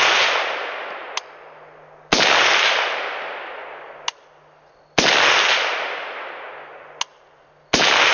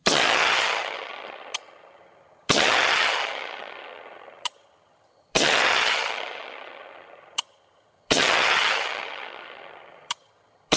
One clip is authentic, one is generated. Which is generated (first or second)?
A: second